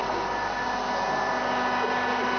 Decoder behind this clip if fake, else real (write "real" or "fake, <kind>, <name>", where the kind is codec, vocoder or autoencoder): real